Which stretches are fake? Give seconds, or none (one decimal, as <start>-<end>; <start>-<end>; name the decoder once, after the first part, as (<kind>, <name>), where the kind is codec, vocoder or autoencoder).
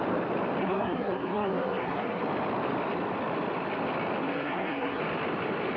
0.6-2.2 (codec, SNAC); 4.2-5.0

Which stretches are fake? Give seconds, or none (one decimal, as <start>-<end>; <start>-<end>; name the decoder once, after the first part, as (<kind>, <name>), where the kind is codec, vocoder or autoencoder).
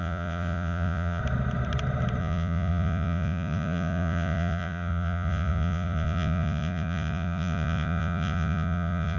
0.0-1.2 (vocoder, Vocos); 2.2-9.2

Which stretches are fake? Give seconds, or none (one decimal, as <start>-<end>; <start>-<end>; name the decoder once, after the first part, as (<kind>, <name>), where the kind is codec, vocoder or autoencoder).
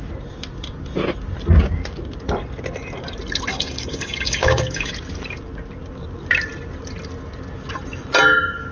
3.5-4.9 (codec, DAC)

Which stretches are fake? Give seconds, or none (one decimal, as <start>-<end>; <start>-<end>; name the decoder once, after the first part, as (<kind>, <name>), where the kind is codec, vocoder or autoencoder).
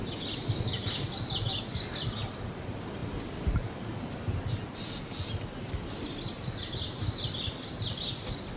none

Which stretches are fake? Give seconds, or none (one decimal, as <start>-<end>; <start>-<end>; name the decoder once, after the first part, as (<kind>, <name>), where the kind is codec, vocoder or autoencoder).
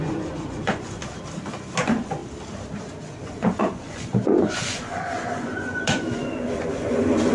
0.0-1.0 (vocoder, Vocos); 1.8-2.2; 3.1-7.3